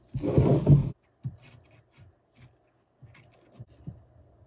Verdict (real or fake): real